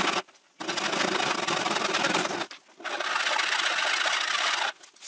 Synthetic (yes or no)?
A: no